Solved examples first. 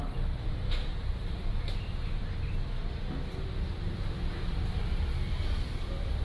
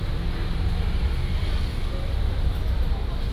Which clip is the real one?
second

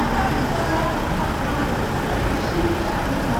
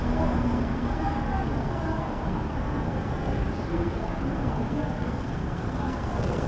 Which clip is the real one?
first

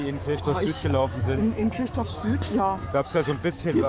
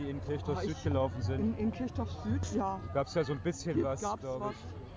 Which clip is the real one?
second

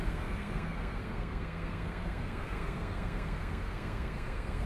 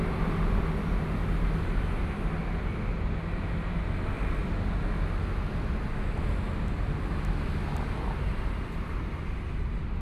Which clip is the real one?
second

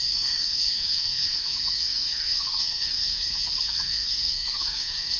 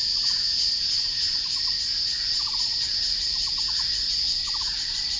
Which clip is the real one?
second